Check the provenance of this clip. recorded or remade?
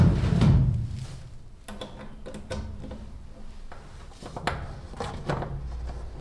recorded